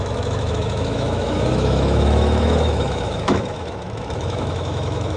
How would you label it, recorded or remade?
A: remade